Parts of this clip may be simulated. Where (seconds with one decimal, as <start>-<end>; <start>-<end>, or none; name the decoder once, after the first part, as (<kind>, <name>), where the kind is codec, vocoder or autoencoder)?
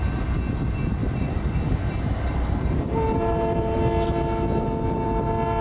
1.0-3.8 (vocoder, BigVGAN v2)